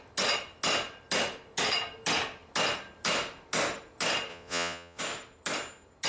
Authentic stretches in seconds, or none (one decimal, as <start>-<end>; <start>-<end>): 0.0-4.3; 5.0-6.1

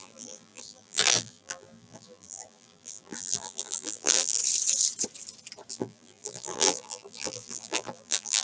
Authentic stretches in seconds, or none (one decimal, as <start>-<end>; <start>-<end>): 4.4-5.7

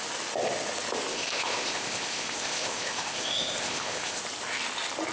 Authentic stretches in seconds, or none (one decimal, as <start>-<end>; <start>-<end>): 0.0-1.1; 4.2-5.1

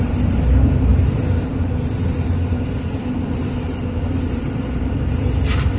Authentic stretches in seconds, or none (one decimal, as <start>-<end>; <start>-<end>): 0.9-2.5

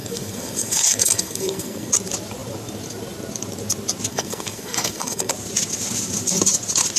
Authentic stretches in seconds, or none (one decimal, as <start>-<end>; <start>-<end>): 1.9-4.1; 5.3-7.0